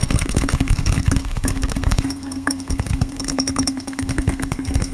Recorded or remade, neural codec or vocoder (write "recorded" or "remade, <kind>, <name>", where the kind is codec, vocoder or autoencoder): remade, codec, SNAC